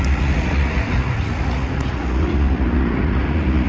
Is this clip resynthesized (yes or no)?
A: yes